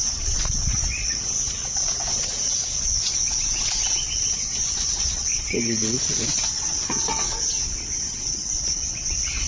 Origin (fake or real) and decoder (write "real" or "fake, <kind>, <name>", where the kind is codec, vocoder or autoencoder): fake, vocoder, WaveNeXt